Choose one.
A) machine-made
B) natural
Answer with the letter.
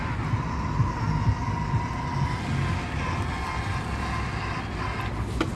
B